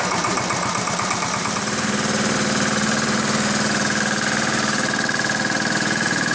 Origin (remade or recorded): remade